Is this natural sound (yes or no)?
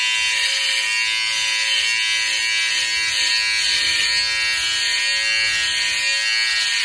yes